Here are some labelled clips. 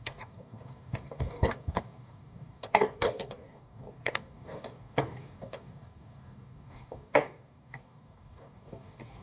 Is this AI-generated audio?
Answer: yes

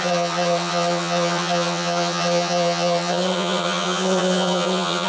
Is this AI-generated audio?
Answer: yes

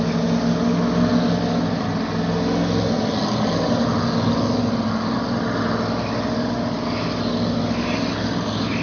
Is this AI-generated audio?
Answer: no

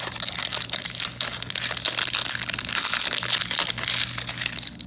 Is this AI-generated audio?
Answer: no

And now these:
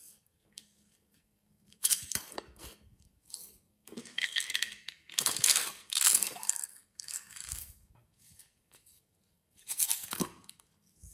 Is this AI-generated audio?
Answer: yes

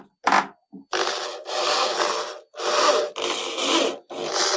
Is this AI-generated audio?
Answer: no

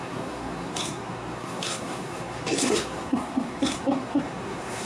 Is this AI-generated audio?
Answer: yes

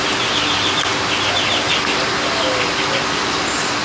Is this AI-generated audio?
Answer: no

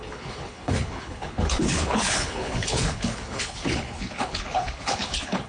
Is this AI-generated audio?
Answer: yes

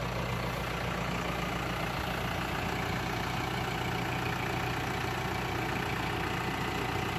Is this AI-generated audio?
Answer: no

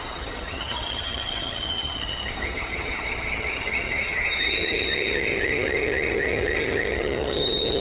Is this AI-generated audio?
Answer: yes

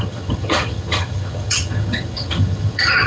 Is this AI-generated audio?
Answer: yes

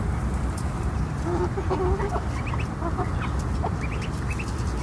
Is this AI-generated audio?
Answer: no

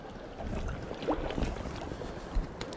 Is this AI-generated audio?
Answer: no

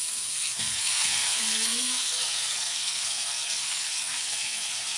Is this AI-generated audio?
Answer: yes